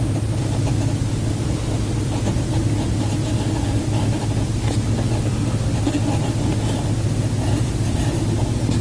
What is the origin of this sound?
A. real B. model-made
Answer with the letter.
A